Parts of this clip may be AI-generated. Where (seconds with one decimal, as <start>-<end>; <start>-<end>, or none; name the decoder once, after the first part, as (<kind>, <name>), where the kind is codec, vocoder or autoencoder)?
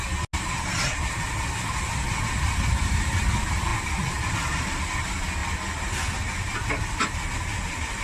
none